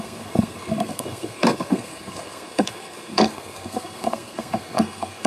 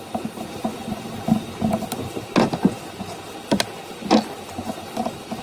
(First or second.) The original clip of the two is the second